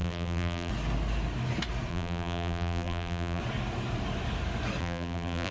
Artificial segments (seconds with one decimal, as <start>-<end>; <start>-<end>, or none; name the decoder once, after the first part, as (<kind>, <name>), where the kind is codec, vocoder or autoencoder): 0.0-0.7 (vocoder, BigVGAN v2); 1.9-3.4; 4.8-5.5